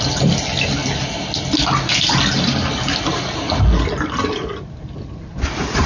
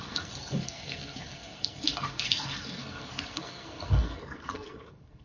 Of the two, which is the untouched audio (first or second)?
first